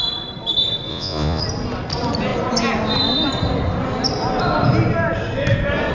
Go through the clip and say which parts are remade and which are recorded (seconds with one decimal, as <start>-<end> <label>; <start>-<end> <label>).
0.0-0.9 recorded; 0.9-1.4 remade; 1.4-5.9 recorded